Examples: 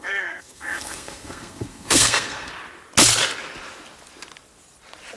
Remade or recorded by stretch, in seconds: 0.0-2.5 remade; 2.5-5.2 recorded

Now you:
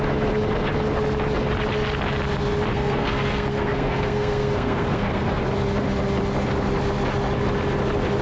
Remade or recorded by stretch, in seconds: 0.0-2.7 recorded; 2.7-5.4 remade; 5.4-8.2 recorded

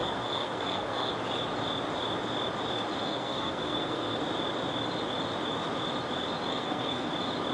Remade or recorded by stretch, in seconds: 0.0-1.1 remade; 1.1-3.0 recorded; 3.0-4.2 remade; 4.2-6.5 recorded; 6.5-7.1 remade; 7.1-7.5 recorded